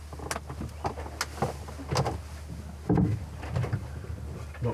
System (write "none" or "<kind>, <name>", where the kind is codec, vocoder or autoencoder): none